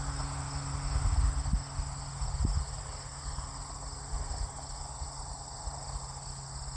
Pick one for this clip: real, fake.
real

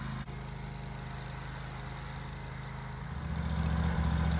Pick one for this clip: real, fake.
real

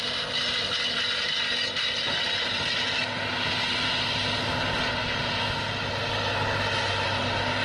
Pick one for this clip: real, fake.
real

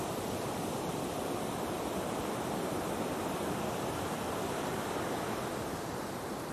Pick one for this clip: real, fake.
fake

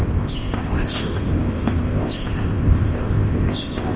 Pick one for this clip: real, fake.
fake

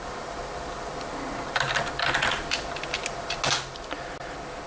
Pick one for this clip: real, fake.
real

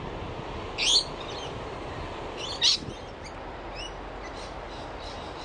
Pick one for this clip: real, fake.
real